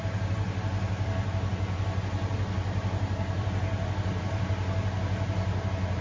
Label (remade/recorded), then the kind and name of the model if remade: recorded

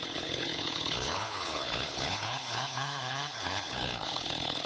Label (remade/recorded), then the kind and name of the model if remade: remade, codec, HILCodec